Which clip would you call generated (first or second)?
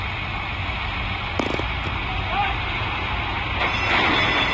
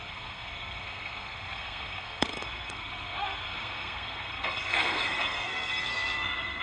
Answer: second